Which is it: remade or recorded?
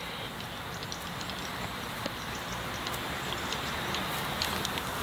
recorded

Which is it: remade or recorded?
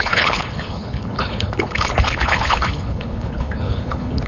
remade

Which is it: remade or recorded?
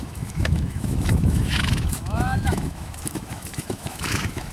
remade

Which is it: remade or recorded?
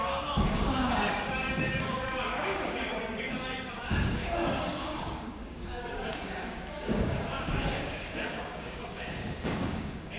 remade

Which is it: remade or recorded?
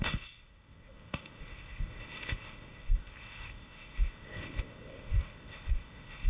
remade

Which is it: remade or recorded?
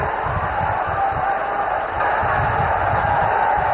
recorded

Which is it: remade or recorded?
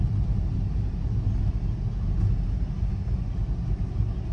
recorded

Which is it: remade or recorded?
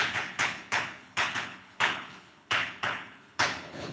remade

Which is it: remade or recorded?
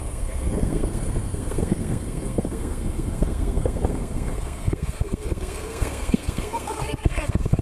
remade